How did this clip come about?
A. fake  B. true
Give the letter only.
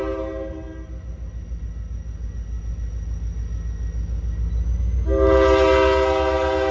B